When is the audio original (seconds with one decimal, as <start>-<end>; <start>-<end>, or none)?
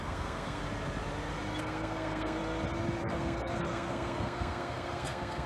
0.6-1.6; 2.4-3.0